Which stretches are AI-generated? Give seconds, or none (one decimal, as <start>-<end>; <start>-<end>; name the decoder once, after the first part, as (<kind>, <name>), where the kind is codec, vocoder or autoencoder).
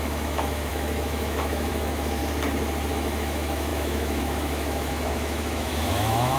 0.0-2.2 (autoencoder, DAC-VAE); 2.9-6.4